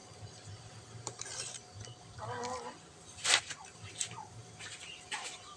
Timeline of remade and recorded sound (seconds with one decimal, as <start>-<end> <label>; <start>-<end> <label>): 0.0-3.4 remade; 3.4-4.4 recorded; 4.4-5.6 remade

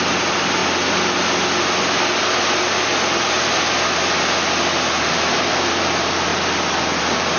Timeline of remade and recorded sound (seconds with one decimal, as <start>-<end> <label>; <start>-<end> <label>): 0.0-0.6 remade; 0.6-5.0 recorded; 5.0-6.3 remade; 6.3-7.0 recorded; 7.0-7.4 remade

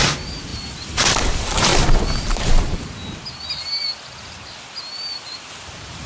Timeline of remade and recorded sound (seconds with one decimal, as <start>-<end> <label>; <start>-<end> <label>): 0.0-0.5 remade; 0.5-1.2 recorded; 1.2-1.7 remade; 1.7-5.4 recorded; 5.4-6.1 remade

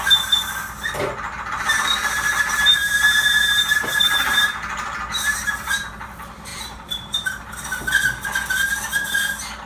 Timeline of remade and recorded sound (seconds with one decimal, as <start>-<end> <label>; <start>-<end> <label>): 0.0-5.1 recorded; 5.1-5.9 remade; 5.9-6.5 recorded; 6.5-7.8 remade; 7.8-9.7 recorded

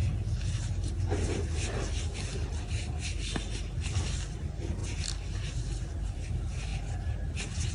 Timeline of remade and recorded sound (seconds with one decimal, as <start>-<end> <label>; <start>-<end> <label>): 0.0-4.0 recorded; 4.0-4.8 remade; 4.8-5.4 recorded; 5.4-6.7 remade; 6.7-7.7 recorded

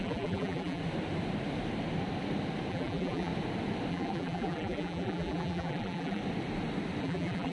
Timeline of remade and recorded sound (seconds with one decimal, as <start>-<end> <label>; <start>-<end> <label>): 0.0-0.8 remade; 0.8-2.7 recorded; 2.7-3.3 remade; 3.3-3.9 recorded; 3.9-6.2 remade; 6.2-7.0 recorded; 7.0-7.5 remade

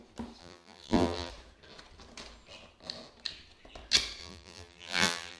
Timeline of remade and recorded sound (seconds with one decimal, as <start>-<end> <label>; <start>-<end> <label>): 0.0-0.4 recorded; 0.4-1.3 remade; 1.3-4.2 recorded; 4.2-5.4 remade